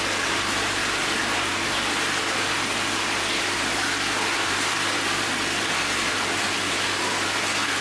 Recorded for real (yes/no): yes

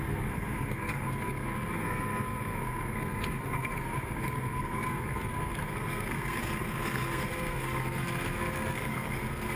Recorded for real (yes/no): no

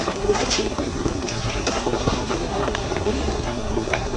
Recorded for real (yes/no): no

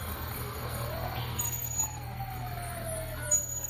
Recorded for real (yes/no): no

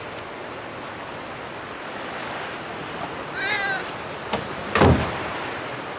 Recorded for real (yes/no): yes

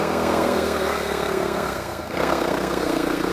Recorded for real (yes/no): no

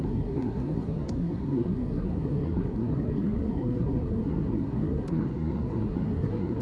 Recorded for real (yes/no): no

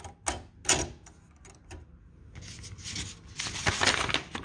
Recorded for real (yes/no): yes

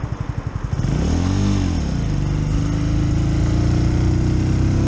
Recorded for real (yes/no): yes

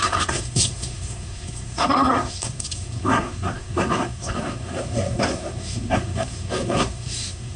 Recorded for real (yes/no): no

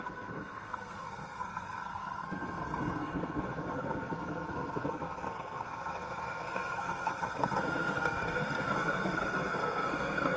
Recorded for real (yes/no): no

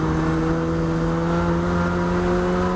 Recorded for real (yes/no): yes